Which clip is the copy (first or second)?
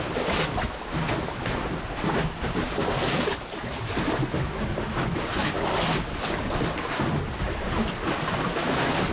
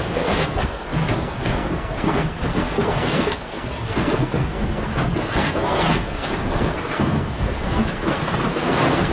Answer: second